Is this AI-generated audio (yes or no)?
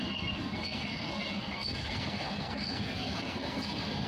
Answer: yes